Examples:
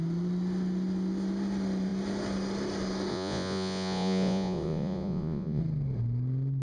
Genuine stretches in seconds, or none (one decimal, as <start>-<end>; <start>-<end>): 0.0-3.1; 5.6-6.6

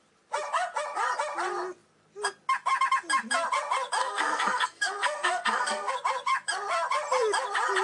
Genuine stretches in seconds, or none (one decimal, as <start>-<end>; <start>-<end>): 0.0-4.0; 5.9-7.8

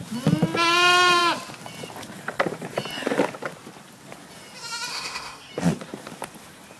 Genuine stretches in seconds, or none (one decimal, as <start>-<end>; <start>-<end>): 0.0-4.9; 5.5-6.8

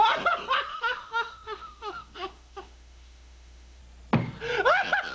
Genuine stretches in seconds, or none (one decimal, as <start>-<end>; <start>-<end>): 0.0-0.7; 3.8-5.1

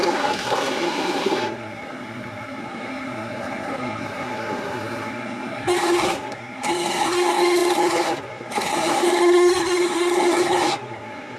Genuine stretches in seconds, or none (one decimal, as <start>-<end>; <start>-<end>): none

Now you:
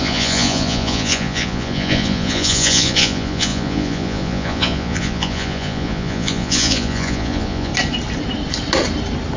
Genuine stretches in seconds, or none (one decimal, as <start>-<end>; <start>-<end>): 7.7-9.4

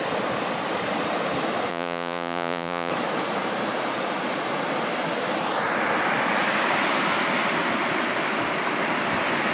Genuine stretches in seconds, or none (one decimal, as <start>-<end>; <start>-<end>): 0.0-1.7; 2.9-9.5